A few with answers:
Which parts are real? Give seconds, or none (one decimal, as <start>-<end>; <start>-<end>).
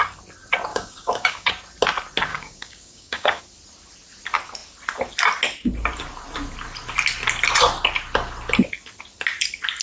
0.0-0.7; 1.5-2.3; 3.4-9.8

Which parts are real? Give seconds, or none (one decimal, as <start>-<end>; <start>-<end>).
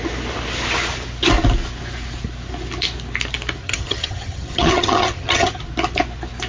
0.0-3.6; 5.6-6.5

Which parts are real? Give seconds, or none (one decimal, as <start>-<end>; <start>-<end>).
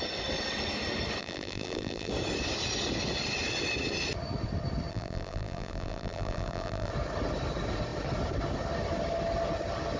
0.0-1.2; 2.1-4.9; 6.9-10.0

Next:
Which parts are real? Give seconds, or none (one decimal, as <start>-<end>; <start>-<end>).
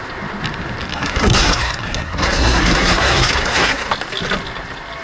0.0-0.9; 3.9-5.0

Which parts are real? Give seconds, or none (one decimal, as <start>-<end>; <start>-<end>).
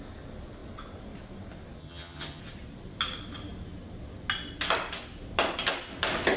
0.0-1.8; 2.4-6.4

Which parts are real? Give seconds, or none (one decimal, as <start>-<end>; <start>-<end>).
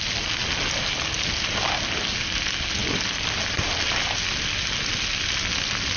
0.0-6.0